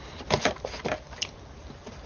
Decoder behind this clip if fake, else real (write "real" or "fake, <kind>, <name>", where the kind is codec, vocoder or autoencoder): real